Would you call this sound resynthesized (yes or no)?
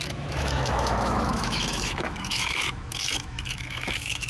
yes